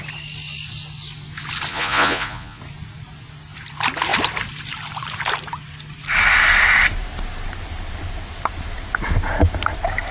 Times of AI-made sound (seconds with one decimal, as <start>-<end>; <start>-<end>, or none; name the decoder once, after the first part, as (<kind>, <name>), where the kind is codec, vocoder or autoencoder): 1.7-2.6 (vocoder, Vocos)